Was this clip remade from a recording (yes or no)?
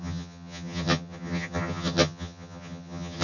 yes